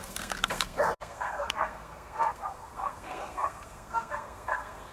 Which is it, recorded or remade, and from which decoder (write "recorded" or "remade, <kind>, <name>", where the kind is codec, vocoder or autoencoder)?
remade, codec, SNAC